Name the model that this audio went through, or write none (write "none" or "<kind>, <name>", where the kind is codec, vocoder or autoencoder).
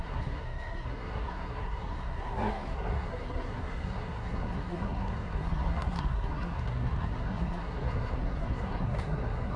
codec, SNAC